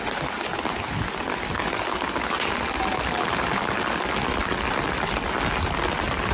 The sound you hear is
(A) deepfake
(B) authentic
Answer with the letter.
B